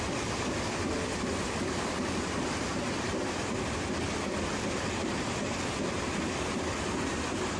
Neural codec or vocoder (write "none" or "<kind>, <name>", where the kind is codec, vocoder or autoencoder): none